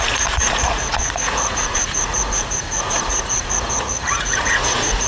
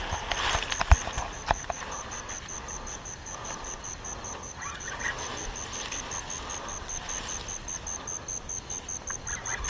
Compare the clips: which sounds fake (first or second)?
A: first